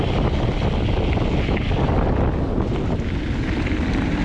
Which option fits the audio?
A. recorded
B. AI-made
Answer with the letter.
A